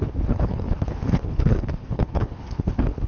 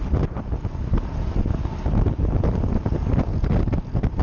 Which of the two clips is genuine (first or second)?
second